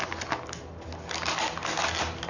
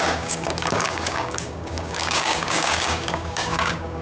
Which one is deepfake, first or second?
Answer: second